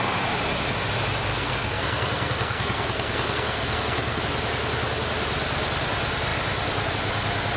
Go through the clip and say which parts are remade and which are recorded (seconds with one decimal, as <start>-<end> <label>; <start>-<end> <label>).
0.0-1.3 recorded; 1.3-4.2 remade; 4.2-7.6 recorded